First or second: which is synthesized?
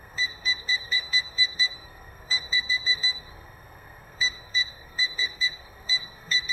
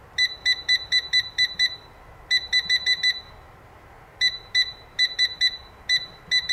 first